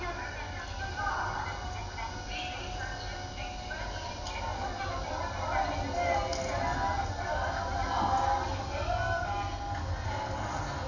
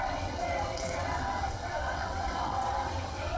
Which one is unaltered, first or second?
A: first